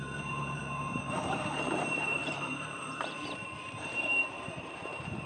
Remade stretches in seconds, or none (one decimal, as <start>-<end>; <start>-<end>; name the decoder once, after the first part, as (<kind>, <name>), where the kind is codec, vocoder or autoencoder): 0.0-5.3 (vocoder, BigVGAN v2)

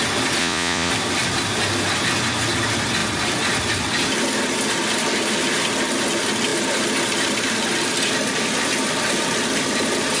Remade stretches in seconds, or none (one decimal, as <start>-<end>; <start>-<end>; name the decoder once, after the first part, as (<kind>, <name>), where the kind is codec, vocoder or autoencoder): 0.4-0.9 (vocoder, Vocos)

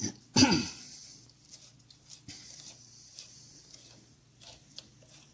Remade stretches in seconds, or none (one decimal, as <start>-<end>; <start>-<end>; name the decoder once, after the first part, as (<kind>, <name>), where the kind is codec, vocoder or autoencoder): none

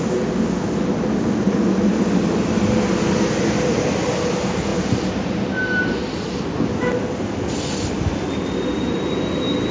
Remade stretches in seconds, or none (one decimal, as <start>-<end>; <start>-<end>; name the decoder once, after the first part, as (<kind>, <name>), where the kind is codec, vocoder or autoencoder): none

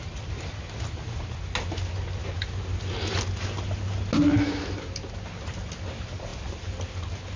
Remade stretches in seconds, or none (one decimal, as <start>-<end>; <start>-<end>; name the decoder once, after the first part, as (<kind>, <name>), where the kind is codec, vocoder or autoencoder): none

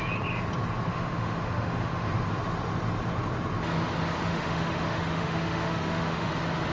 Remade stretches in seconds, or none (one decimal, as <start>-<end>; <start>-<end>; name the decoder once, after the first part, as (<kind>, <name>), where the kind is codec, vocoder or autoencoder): 0.9-2.1 (autoencoder, DAC-VAE); 4.3-6.3